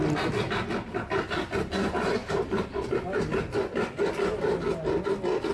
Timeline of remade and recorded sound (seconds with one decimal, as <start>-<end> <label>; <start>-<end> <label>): 0.0-2.2 recorded; 2.2-2.7 remade; 2.7-5.5 recorded